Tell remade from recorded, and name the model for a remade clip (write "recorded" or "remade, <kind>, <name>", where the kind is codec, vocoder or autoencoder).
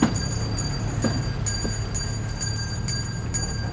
recorded